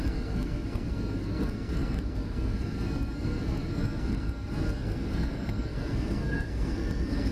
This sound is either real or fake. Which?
fake